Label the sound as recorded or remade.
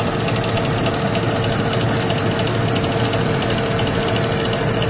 recorded